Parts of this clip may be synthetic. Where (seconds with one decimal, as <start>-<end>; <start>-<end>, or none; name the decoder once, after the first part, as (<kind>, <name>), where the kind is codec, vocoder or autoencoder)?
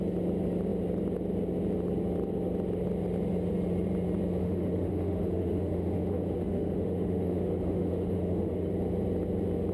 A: 4.4-8.7 (autoencoder, DAC-VAE)